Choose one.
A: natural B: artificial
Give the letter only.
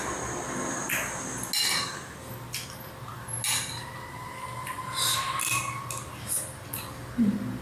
A